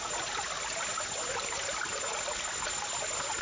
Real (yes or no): yes